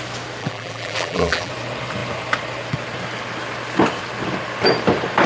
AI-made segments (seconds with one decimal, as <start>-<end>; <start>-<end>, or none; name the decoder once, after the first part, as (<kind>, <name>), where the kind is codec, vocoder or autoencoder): 0.4-1.5 (vocoder, BigVGAN v2)